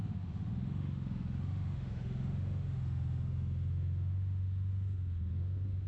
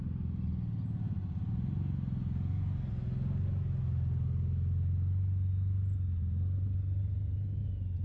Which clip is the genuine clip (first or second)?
second